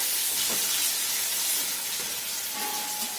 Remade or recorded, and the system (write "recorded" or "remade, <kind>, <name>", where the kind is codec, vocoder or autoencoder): recorded